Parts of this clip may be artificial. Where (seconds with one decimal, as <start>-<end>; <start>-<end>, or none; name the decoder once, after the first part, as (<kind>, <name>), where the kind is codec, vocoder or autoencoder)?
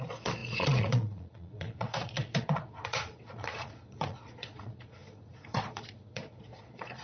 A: 0.0-7.0 (vocoder, Vocos)